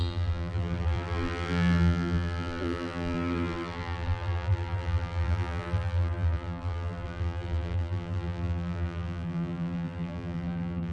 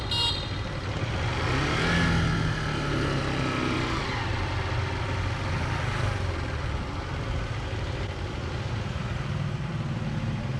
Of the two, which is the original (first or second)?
second